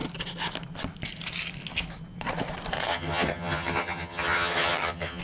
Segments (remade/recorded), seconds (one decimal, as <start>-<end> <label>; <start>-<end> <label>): 0.0-2.9 recorded; 2.9-5.2 remade